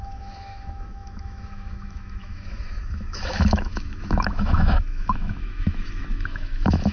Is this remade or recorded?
remade